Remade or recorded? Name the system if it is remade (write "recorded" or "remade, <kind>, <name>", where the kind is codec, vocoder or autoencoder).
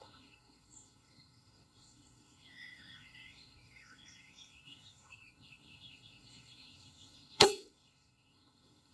remade, codec, SNAC